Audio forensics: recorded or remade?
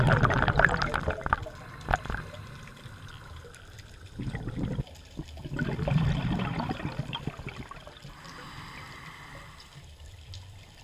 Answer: remade